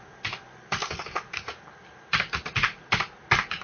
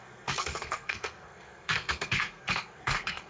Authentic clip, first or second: first